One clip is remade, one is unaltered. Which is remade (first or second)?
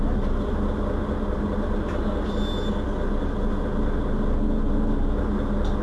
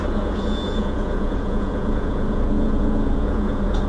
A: second